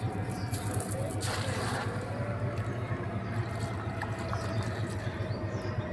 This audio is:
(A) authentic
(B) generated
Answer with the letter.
A